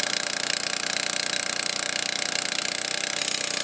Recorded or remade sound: recorded